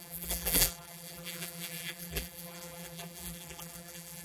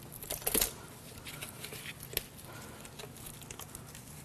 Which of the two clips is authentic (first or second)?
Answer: second